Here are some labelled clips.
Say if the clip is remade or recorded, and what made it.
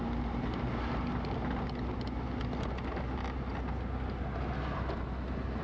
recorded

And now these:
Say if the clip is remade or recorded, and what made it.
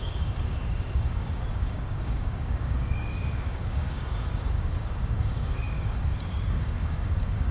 remade, codec, DAC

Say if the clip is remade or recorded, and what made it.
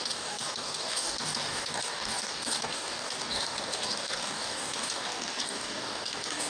remade, codec, DAC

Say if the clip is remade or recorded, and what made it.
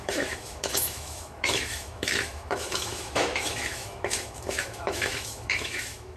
remade, autoencoder, DAC-VAE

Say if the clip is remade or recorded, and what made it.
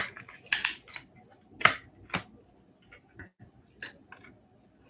recorded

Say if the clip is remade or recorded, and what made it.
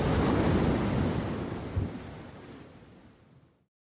recorded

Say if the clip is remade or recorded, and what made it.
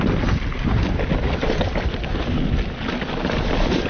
remade, vocoder, BigVGAN v2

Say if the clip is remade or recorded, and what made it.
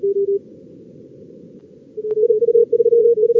recorded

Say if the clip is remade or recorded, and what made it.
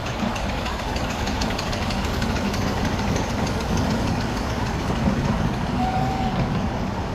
remade, codec, DAC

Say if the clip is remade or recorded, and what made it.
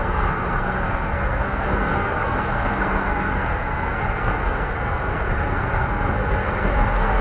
remade, codec, SNAC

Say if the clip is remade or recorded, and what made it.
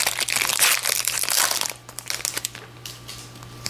recorded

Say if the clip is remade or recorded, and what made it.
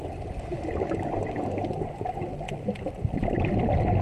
recorded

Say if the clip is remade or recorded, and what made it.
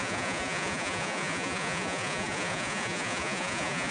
remade, vocoder, Vocos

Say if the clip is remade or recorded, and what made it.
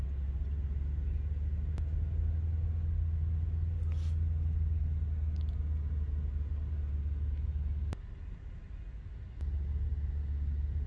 recorded